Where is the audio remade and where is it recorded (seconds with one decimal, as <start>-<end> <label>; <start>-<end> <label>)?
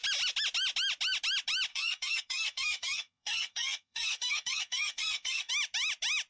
0.0-1.7 recorded; 1.7-5.5 remade; 5.5-6.3 recorded